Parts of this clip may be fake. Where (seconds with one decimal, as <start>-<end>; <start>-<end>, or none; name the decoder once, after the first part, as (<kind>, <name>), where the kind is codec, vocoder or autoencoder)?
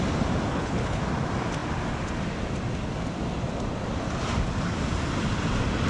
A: 0.5-1.0 (codec, HILCodec)